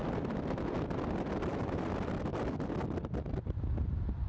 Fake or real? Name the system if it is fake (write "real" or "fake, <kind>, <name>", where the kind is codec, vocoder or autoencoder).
real